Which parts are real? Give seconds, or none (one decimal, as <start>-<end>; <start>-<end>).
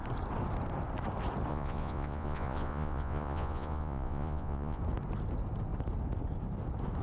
0.0-1.5; 4.8-7.0